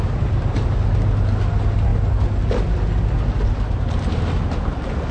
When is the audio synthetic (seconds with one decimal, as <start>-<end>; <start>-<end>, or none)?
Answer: none